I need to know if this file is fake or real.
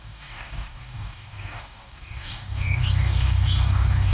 fake